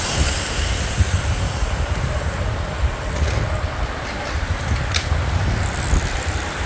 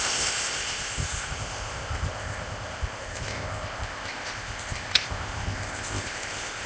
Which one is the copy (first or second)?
second